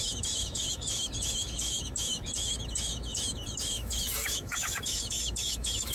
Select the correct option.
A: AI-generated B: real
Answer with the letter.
A